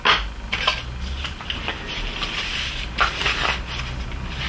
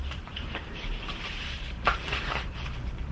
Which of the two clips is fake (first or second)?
second